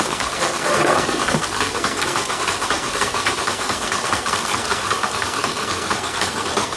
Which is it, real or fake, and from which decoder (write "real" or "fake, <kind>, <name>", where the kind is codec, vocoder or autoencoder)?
fake, codec, SNAC